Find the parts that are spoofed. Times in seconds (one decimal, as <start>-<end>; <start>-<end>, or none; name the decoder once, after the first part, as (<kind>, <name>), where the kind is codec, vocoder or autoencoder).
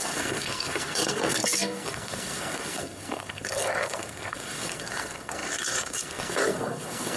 0.0-7.2 (codec, SNAC)